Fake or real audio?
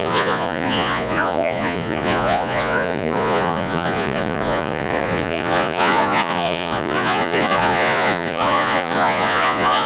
fake